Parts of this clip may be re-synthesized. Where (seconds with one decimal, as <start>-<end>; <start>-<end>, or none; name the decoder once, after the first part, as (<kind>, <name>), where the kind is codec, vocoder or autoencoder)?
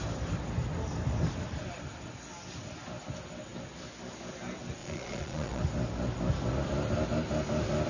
4.8-5.6 (vocoder, Vocos)